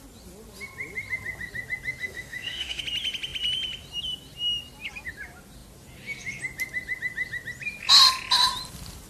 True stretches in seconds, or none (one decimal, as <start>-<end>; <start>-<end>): 0.0-2.0; 2.8-9.1

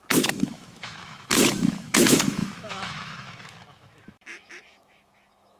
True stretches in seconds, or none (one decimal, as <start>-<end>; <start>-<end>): none

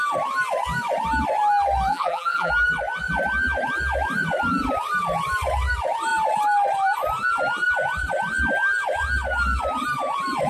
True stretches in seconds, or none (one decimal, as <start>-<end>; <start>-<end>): 0.0-1.9; 2.5-10.5

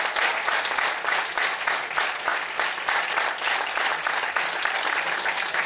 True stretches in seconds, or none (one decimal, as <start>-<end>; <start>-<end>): 0.0-5.7

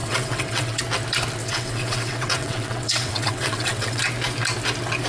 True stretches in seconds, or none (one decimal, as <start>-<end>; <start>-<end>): 0.8-1.4; 4.0-5.1

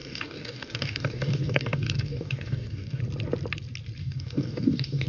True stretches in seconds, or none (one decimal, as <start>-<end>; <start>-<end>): 3.0-4.0

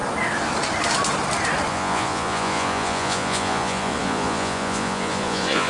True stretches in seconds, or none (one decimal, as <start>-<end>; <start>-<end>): 0.0-1.7

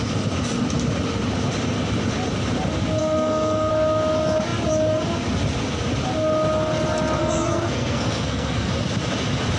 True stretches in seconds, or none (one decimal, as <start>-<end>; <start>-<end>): 0.0-3.0; 3.7-7.2; 8.7-9.6